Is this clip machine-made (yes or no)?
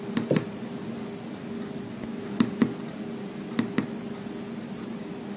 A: no